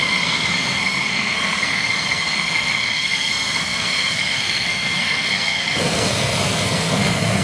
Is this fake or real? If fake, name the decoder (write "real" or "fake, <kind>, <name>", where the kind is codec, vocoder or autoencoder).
fake, codec, SNAC